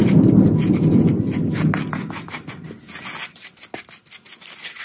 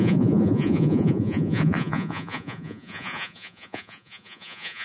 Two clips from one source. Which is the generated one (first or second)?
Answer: second